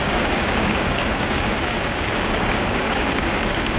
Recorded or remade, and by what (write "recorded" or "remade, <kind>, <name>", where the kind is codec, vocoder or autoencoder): remade, codec, DAC